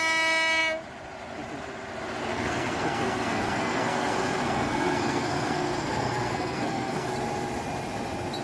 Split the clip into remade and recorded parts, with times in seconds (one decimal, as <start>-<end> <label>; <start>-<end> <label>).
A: 0.0-2.3 recorded; 2.3-7.1 remade; 7.1-8.4 recorded